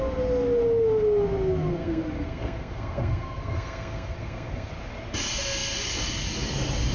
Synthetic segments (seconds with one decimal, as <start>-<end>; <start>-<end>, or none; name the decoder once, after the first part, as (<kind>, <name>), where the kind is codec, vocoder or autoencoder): 1.7-4.7 (codec, SNAC)